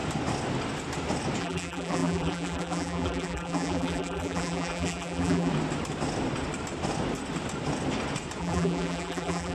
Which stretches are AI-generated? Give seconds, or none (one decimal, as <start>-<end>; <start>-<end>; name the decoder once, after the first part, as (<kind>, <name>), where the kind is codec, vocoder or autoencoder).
1.4-5.5 (vocoder, BigVGAN v2); 8.4-9.5